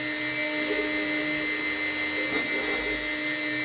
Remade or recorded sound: recorded